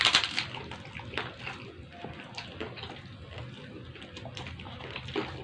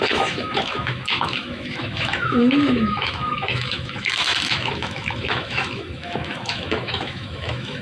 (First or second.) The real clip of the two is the first